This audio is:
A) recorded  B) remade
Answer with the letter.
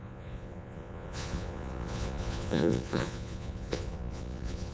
B